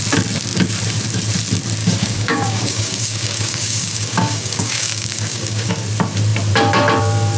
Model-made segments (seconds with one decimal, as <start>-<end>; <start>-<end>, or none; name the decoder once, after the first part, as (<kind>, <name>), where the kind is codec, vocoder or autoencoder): 1.8-5.7 (codec, DAC)